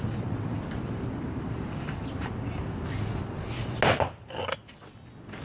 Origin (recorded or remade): recorded